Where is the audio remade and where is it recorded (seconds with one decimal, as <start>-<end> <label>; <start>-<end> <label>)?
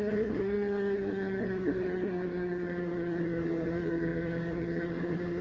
0.0-5.4 remade